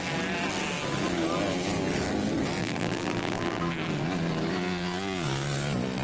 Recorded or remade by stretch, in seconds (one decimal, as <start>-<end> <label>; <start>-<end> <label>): 0.0-2.6 recorded; 2.6-3.6 remade; 3.6-6.0 recorded